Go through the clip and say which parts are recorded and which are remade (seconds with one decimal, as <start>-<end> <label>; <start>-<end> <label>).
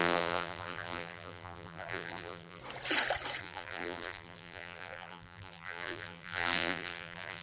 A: 0.0-2.6 remade; 2.6-3.4 recorded; 3.4-7.4 remade